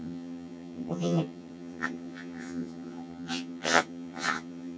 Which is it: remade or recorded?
remade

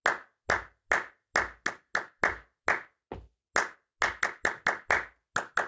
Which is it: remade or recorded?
recorded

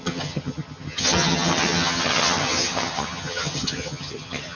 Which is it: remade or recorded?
remade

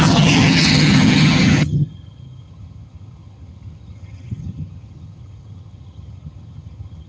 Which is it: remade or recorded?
remade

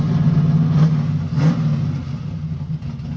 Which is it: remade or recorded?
recorded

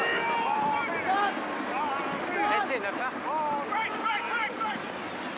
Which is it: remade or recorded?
recorded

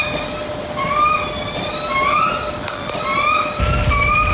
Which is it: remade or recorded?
recorded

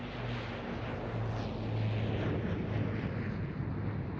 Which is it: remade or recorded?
recorded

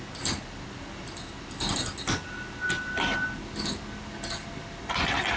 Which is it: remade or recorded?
recorded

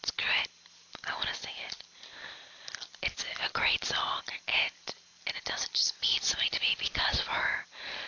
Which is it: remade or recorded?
recorded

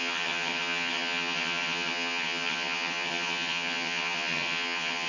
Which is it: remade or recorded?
remade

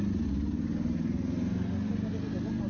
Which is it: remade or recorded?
recorded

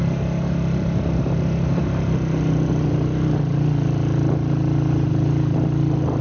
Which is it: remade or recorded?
recorded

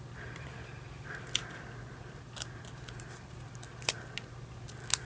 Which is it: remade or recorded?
recorded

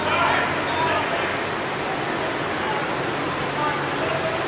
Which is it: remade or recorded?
recorded